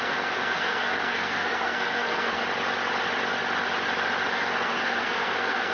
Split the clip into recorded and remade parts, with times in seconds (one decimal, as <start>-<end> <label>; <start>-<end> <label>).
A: 0.0-2.4 remade; 2.4-4.3 recorded; 4.3-5.7 remade